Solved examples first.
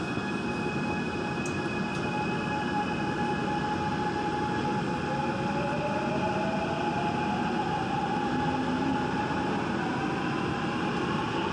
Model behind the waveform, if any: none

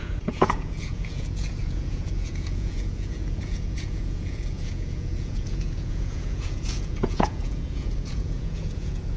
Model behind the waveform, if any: vocoder, Vocos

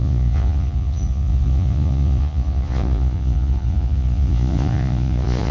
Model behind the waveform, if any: vocoder, Vocos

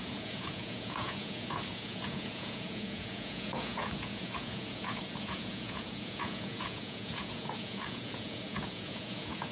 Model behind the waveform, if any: vocoder, Vocos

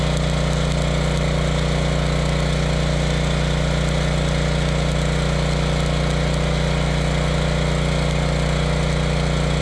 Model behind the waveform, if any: none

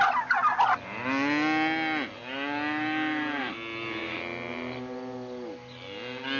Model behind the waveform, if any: none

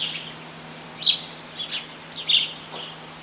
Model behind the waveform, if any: none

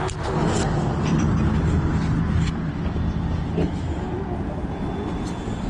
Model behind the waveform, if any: none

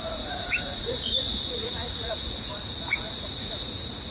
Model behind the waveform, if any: vocoder, Vocos